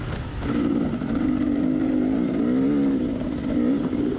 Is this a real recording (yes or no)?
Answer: yes